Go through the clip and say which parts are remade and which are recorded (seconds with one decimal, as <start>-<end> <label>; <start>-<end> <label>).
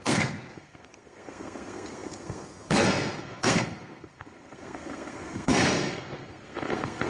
0.0-7.1 remade